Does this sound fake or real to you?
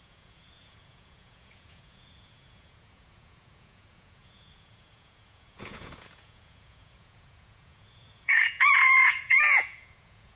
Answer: fake